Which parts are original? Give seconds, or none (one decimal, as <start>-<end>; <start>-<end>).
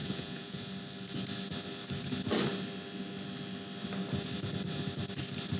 0.6-5.6